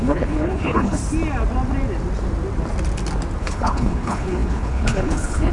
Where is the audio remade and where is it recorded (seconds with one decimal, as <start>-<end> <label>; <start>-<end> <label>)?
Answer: 0.0-1.0 remade; 1.0-3.4 recorded; 3.4-5.5 remade